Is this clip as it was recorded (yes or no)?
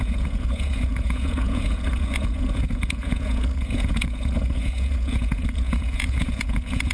no